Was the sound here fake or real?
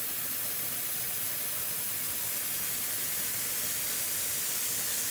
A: real